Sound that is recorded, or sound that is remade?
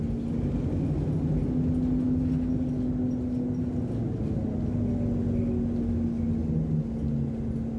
recorded